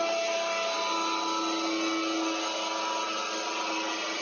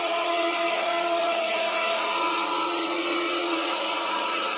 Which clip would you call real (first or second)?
first